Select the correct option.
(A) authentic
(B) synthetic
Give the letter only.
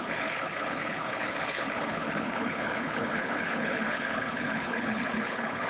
B